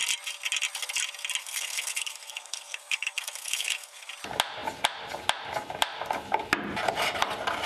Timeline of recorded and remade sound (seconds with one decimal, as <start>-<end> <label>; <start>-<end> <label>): 0.0-1.4 recorded; 1.4-4.1 remade; 4.1-7.7 recorded